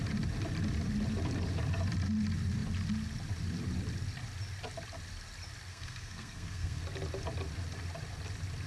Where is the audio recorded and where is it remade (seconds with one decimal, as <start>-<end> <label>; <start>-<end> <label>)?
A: 0.0-5.7 recorded; 5.7-6.8 remade; 6.8-8.7 recorded